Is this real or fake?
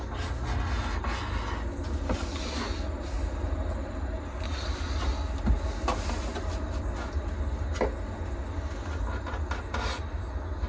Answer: real